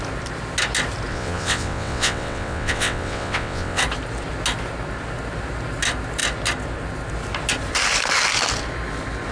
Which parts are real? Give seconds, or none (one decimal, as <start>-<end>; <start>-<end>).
0.0-1.1; 3.8-9.3